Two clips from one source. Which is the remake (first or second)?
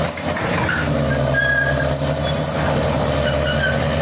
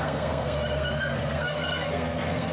second